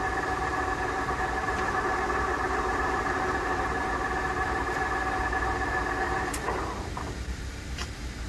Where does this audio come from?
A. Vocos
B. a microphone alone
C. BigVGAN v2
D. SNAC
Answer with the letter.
C